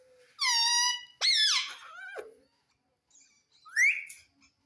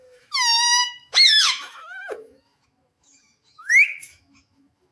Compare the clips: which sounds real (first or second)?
first